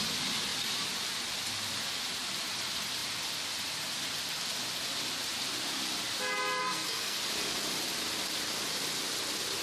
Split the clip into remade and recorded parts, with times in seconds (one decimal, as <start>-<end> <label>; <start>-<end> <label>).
0.0-6.6 recorded; 6.6-7.2 remade; 7.2-9.6 recorded